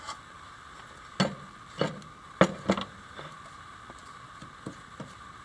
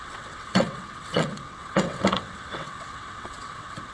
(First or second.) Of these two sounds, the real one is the first